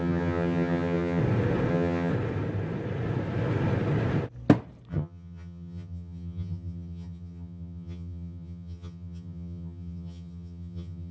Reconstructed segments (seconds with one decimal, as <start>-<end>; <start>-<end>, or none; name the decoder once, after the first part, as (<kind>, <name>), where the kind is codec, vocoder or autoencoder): 0.0-1.2 (vocoder, HiFi-GAN); 1.7-2.1; 4.9-11.1